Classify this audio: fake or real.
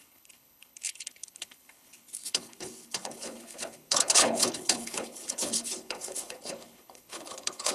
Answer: fake